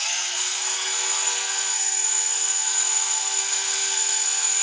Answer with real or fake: fake